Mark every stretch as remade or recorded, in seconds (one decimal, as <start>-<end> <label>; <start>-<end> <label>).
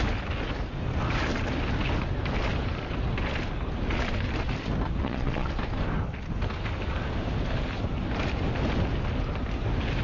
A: 0.0-5.0 recorded; 5.0-5.5 remade; 5.5-10.0 recorded